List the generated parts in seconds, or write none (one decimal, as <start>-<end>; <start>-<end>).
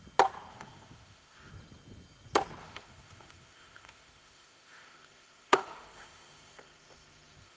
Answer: 0.5-1.5; 2.6-7.6